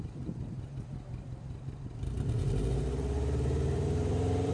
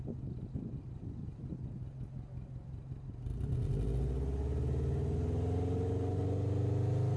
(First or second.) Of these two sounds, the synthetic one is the first